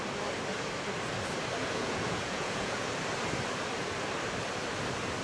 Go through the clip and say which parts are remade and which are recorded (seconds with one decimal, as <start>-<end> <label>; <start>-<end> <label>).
0.0-1.6 recorded; 1.6-2.9 remade; 2.9-5.2 recorded